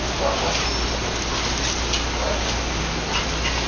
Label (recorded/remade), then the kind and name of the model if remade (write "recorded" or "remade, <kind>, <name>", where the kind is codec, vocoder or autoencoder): recorded